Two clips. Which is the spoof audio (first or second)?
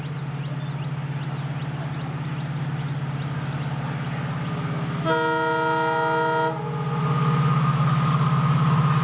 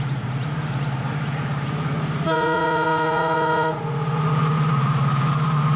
second